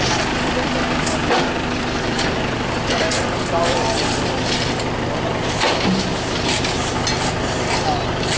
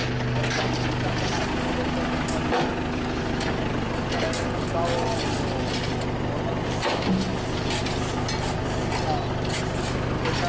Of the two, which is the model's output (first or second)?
first